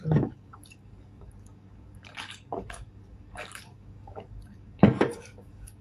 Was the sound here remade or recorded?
remade